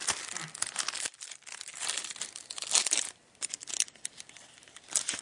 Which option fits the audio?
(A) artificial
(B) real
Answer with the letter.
B